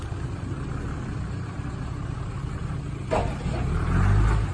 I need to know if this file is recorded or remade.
recorded